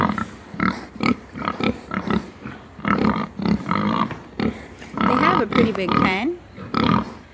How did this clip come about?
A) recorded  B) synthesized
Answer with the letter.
B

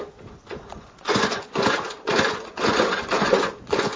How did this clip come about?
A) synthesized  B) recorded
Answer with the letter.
A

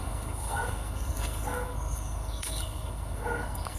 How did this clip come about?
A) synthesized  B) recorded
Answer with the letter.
A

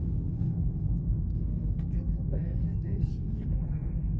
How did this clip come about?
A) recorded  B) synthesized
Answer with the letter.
B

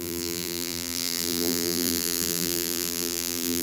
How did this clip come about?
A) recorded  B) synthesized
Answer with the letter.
B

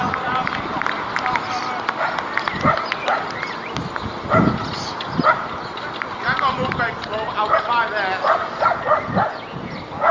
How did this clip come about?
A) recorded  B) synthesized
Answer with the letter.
A